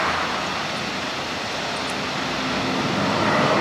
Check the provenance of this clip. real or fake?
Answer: real